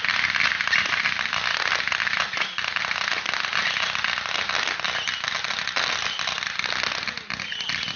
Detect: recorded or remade recorded